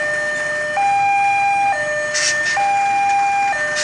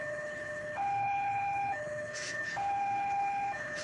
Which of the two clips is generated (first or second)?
second